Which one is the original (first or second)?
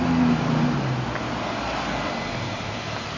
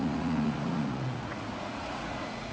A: first